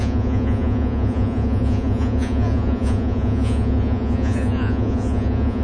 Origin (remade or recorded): remade